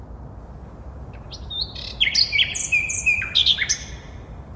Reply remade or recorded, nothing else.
recorded